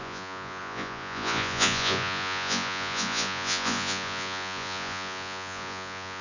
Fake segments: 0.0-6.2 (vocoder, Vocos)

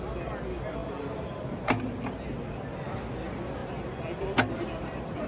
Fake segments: none

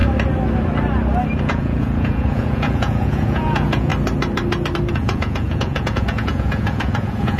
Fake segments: 1.4-3.9 (vocoder, Vocos); 4.9-7.4

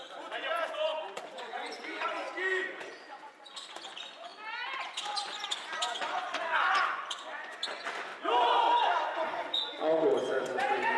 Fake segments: 0.0-4.3 (vocoder, Vocos); 4.8-8.1; 8.6-11.0

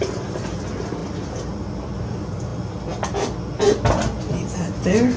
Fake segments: none

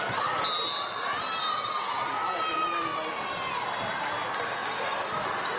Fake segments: none

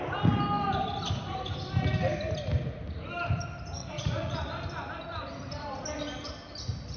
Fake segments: 3.8-4.4 (vocoder, Vocos)

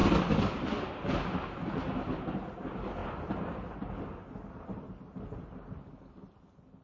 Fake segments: none